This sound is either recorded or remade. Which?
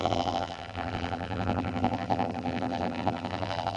remade